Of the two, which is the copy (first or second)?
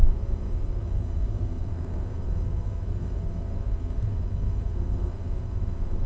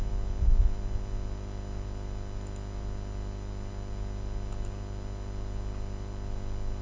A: first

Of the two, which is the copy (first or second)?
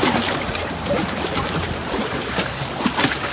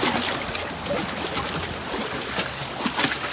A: first